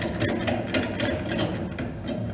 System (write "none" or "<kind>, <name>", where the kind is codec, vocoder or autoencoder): none